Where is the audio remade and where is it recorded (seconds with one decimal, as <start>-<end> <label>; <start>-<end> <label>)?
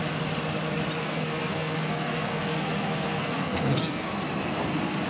0.0-1.0 recorded; 1.0-4.1 remade; 4.1-5.1 recorded